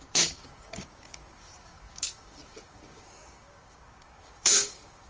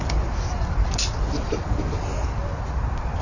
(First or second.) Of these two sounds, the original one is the second